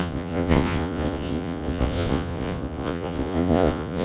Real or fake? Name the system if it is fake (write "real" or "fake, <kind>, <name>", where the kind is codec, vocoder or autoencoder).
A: fake, vocoder, Vocos